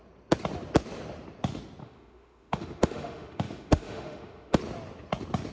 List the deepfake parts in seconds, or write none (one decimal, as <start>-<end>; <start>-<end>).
1.8-4.6